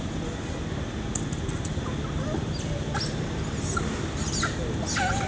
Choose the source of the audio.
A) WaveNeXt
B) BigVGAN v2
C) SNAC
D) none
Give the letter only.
D